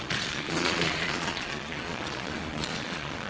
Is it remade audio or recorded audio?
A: remade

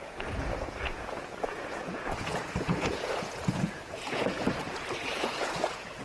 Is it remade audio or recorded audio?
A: remade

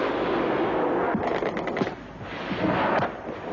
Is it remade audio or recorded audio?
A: recorded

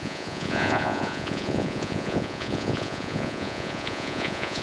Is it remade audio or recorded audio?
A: remade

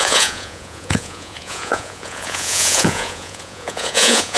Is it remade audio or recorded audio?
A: remade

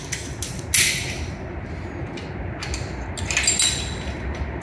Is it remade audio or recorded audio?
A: recorded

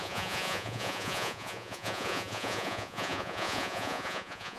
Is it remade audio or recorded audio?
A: remade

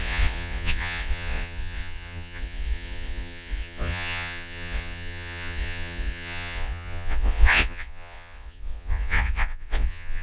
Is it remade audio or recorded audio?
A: remade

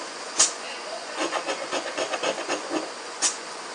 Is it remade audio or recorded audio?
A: remade